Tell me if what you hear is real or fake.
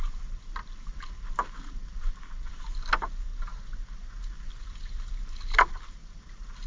real